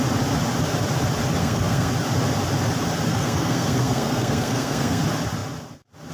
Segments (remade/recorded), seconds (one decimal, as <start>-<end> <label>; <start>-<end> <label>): 0.0-1.4 recorded; 1.4-1.9 remade; 1.9-3.1 recorded; 3.1-5.0 remade; 5.0-6.1 recorded